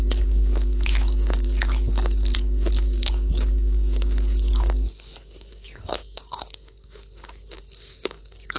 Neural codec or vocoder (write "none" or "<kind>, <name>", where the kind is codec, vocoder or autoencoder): codec, DAC